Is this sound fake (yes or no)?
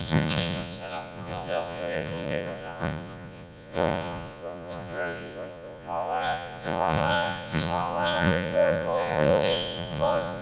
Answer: yes